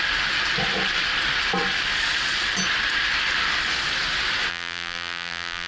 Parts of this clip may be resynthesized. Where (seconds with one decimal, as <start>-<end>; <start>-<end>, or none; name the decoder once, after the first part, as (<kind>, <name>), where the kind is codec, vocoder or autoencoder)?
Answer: 4.5-5.7 (vocoder, BigVGAN v2)